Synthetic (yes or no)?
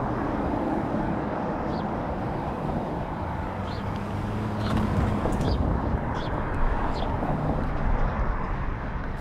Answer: yes